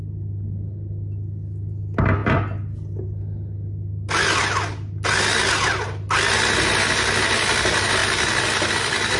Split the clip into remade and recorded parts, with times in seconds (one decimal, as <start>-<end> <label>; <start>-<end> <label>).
0.0-9.2 recorded